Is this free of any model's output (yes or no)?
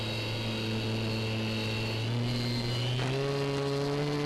yes